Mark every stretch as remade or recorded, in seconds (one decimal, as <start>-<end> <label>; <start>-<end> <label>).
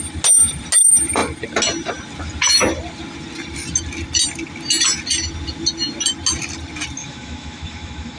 0.0-7.0 recorded; 7.0-8.2 remade